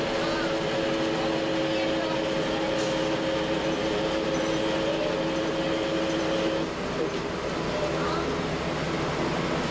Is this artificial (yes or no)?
no